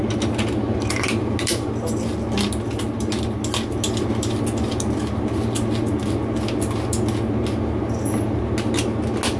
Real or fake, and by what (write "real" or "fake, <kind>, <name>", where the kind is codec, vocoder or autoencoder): real